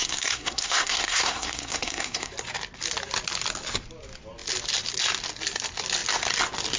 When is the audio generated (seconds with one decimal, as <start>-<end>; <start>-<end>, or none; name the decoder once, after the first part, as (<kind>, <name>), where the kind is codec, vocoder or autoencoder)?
0.0-2.3 (codec, SNAC)